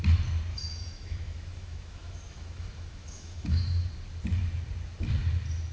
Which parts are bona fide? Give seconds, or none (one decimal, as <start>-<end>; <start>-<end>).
0.0-0.5; 3.9-5.7